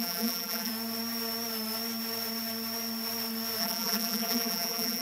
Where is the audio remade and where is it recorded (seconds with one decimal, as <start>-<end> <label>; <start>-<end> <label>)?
0.0-0.7 remade; 0.7-3.6 recorded; 3.6-5.0 remade